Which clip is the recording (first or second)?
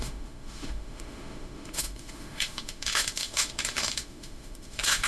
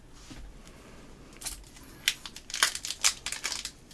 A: second